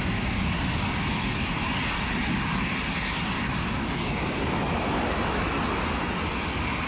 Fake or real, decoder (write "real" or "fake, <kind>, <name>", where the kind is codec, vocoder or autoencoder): real